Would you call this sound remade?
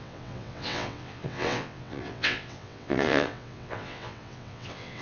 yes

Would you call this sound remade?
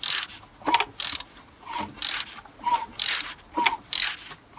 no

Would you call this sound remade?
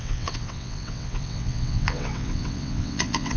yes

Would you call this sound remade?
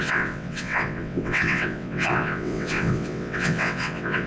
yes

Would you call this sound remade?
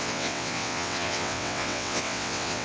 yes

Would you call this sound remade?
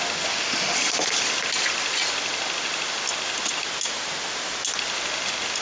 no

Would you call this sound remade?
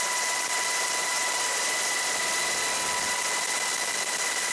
no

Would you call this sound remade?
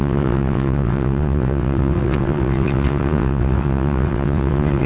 yes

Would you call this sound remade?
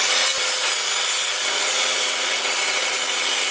no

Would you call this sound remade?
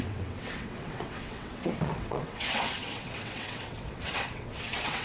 yes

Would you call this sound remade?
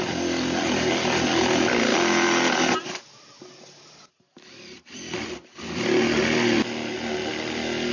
no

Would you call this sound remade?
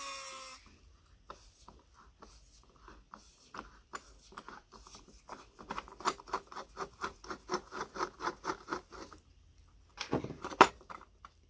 no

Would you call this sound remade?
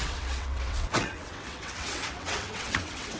yes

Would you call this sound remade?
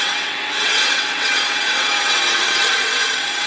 yes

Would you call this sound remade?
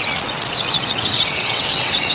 yes